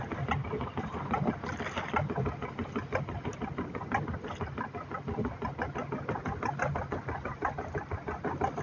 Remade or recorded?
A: recorded